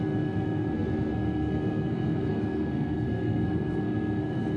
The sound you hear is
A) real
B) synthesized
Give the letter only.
B